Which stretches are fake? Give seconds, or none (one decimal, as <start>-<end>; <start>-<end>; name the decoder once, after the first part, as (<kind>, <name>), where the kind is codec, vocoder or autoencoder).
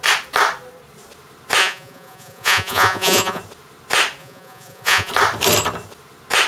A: 1.6-3.4 (vocoder, Vocos); 4.2-5.1